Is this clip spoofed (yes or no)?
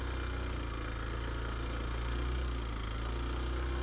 no